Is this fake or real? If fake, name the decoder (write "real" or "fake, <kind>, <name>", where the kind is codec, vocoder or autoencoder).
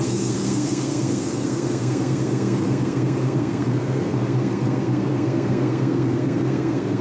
fake, codec, SNAC